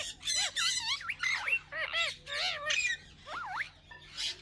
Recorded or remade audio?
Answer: recorded